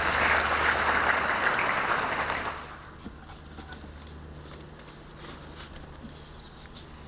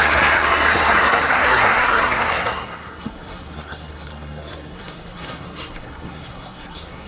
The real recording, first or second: first